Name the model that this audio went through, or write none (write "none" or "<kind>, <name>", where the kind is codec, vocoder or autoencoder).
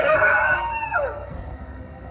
codec, SNAC